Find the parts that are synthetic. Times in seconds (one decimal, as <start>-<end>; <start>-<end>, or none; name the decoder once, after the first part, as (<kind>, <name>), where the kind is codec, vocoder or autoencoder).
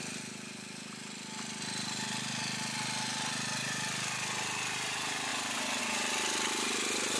none